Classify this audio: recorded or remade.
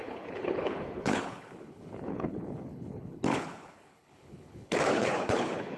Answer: remade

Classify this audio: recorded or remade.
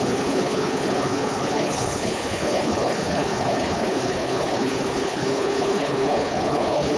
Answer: remade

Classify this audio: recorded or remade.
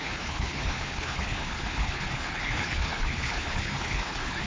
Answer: remade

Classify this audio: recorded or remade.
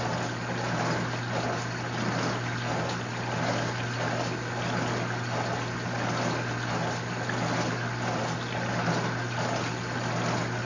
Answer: recorded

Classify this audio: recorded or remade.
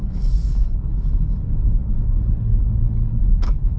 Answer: remade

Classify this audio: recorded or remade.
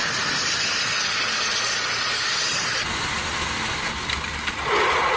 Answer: recorded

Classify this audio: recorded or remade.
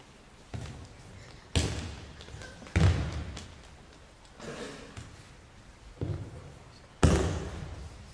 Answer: recorded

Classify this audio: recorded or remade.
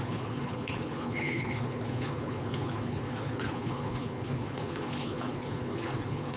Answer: remade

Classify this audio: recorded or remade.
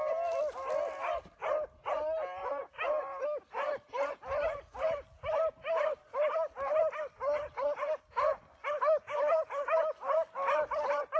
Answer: recorded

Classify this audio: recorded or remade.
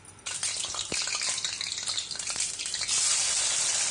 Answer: recorded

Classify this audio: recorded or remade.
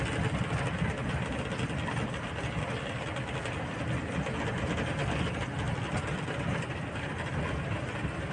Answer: recorded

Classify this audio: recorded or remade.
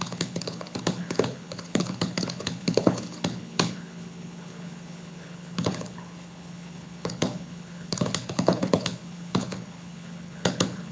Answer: remade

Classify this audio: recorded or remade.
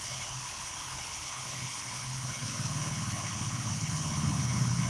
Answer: remade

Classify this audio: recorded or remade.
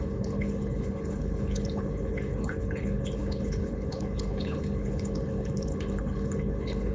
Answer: remade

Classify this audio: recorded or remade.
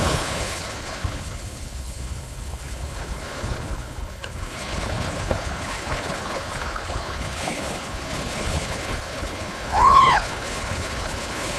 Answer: remade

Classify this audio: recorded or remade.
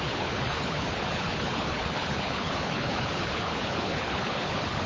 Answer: remade